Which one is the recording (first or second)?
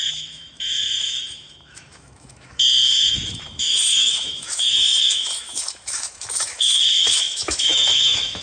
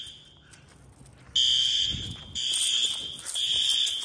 second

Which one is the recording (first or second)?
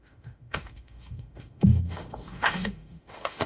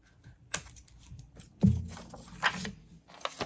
second